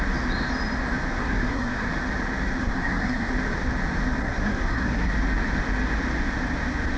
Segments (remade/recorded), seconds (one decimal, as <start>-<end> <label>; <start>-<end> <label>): 0.0-1.1 recorded; 1.1-1.9 remade; 1.9-2.6 recorded; 2.6-3.3 remade; 3.3-4.2 recorded; 4.2-5.1 remade; 5.1-7.0 recorded

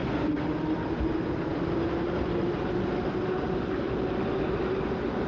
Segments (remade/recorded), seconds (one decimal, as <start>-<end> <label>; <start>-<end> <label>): 0.0-0.9 remade; 0.9-5.3 recorded

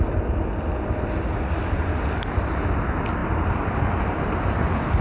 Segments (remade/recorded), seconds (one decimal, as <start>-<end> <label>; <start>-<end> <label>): 0.0-5.0 recorded